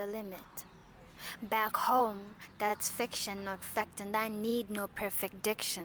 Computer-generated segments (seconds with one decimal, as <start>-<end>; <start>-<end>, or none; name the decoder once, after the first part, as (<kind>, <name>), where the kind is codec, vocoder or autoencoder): 2.7-3.8 (autoencoder, DAC-VAE)